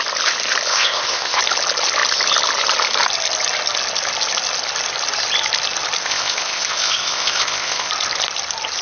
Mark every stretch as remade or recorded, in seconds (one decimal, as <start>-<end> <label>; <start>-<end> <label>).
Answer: 0.0-0.7 recorded; 0.7-1.4 remade; 1.4-6.0 recorded; 6.0-7.9 remade; 7.9-8.8 recorded